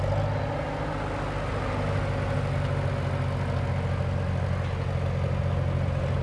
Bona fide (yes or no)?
yes